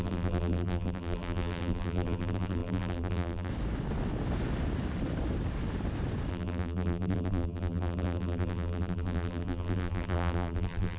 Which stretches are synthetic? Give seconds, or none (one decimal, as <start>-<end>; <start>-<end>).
0.0-3.5; 6.3-11.0